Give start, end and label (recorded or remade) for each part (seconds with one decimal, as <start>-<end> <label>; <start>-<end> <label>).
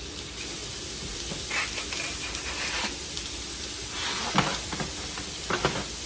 0.0-6.1 recorded